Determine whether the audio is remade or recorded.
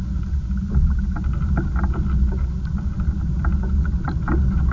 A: recorded